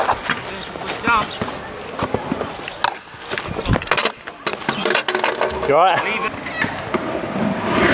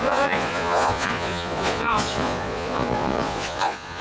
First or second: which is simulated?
second